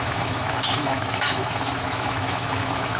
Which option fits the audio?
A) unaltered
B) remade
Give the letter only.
B